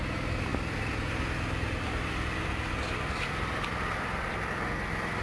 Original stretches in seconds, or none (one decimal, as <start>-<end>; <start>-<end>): 0.0-5.2